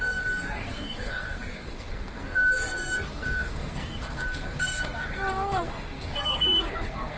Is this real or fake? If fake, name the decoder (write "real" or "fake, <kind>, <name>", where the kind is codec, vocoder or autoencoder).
fake, codec, SNAC